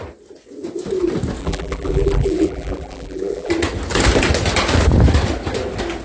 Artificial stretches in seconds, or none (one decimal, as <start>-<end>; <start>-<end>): 1.4-3.5